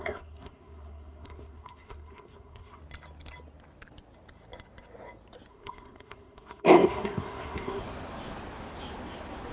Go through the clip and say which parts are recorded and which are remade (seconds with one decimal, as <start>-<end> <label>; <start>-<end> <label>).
0.0-2.8 remade; 2.8-5.5 recorded; 5.5-7.8 remade; 7.8-9.5 recorded